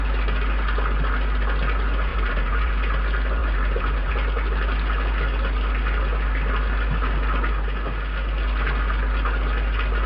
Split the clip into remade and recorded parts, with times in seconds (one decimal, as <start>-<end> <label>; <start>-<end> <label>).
0.0-2.1 recorded; 2.1-2.7 remade; 2.7-3.4 recorded; 3.4-4.1 remade; 4.1-10.1 recorded